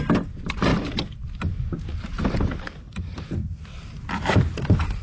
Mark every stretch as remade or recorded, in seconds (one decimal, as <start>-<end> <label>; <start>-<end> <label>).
0.0-5.0 recorded